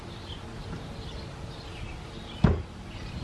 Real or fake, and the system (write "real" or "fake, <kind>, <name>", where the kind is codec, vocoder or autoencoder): real